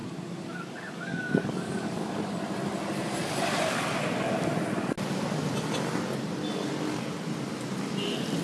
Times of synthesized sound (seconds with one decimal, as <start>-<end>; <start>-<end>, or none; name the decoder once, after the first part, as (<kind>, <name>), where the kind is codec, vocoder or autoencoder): 0.0-2.2 (codec, DAC)